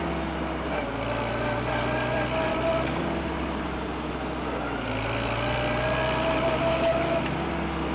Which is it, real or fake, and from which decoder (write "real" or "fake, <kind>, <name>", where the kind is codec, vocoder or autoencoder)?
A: real